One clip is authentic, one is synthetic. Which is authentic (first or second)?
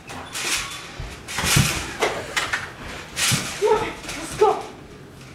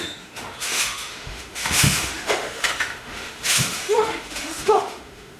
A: first